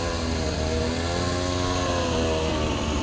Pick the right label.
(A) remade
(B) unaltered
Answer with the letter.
B